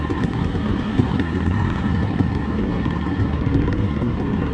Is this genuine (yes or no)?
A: no